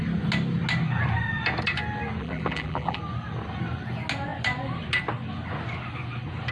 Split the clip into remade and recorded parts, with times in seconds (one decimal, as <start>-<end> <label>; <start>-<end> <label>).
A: 0.0-2.2 recorded; 2.2-3.0 remade; 3.0-6.5 recorded